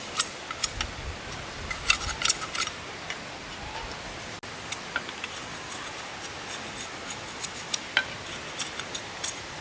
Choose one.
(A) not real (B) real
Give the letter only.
B